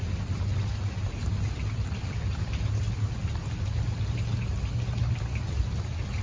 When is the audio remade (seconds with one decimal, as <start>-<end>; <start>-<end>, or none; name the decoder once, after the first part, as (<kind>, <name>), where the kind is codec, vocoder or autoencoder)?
none